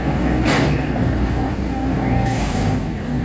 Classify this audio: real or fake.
fake